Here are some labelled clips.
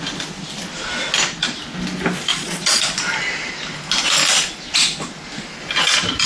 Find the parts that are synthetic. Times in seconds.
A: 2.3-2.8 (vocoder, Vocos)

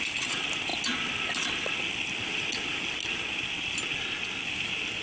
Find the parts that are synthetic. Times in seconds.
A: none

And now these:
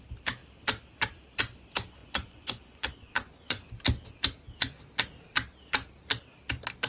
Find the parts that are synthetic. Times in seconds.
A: 2.0-3.7 (vocoder, Vocos)